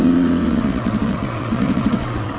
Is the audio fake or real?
fake